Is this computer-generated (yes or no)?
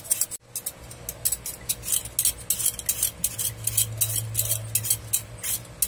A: no